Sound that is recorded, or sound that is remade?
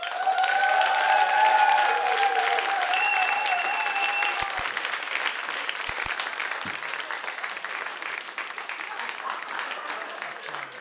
recorded